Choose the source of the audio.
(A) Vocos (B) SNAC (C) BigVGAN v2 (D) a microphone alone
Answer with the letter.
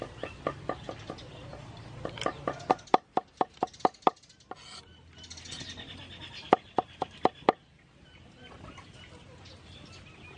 D